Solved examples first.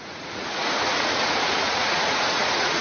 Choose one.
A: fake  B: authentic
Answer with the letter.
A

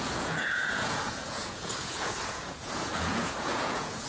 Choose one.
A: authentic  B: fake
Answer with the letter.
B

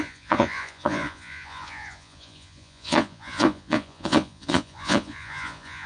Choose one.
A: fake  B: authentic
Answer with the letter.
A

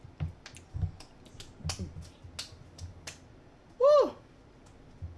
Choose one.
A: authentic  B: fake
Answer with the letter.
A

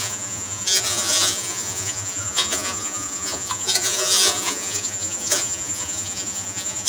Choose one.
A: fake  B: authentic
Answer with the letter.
A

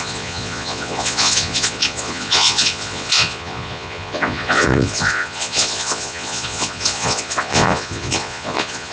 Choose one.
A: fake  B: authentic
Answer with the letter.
A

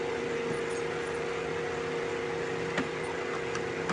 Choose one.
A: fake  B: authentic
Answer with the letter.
B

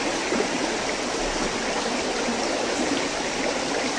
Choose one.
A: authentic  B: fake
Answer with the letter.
A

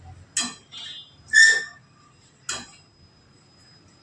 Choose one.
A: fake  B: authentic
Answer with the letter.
B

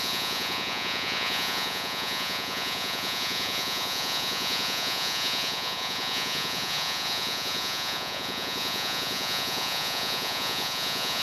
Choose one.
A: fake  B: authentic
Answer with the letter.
A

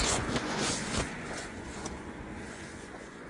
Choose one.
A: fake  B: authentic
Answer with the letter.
A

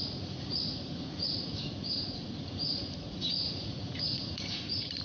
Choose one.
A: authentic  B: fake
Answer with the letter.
B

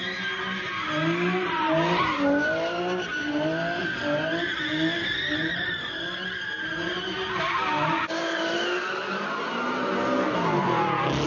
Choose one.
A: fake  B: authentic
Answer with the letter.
B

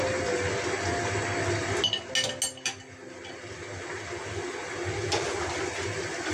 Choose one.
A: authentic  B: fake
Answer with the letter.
A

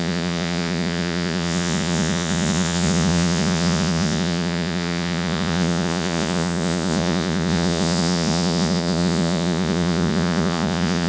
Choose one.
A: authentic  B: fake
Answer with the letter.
B